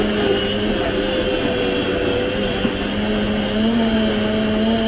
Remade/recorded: recorded